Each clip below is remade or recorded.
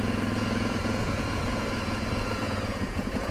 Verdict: remade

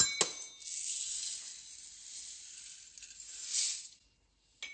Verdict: recorded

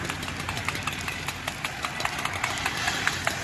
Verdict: recorded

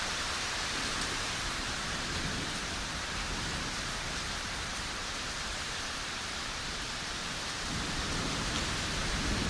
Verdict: remade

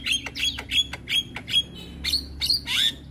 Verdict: recorded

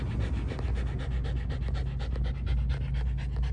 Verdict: recorded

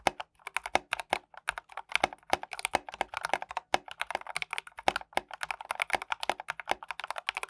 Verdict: recorded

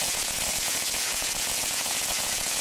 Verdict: remade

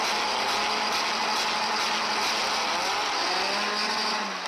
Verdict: recorded